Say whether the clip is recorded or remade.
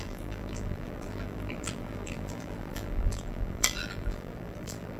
remade